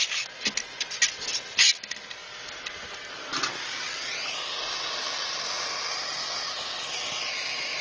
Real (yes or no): yes